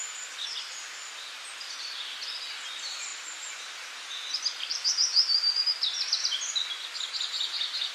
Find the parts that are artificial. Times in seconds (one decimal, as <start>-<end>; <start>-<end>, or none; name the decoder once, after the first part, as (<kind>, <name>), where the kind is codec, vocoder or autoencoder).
0.0-1.9 (vocoder, BigVGAN v2); 3.1-3.6; 5.1-7.0